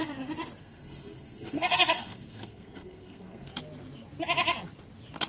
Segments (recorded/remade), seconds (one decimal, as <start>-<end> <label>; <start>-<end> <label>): 0.0-0.6 recorded; 0.6-3.5 remade; 3.5-5.3 recorded